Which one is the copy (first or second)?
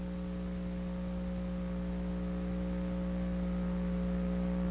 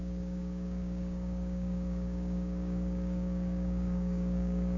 second